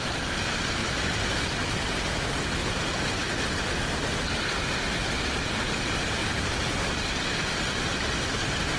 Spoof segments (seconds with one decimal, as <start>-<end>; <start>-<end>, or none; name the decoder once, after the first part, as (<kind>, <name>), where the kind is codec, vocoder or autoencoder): 0.8-1.6 (vocoder, BigVGAN v2); 6.2-6.8